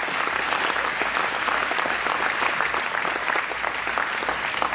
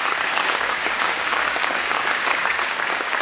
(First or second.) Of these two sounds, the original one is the first